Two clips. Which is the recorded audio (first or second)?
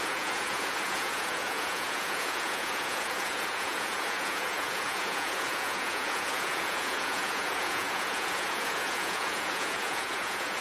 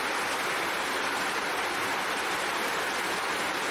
second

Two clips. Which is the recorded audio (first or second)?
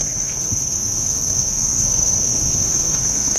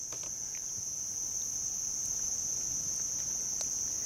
second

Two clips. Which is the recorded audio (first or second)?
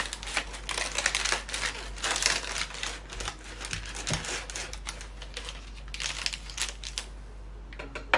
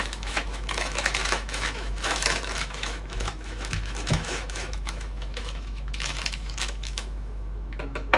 first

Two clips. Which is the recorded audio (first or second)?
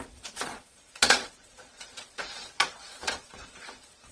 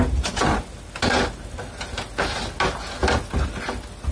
second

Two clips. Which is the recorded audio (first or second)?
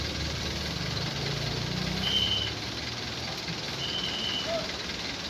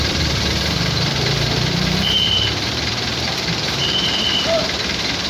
first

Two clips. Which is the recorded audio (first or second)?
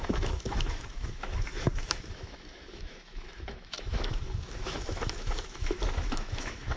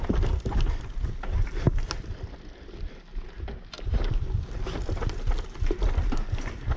second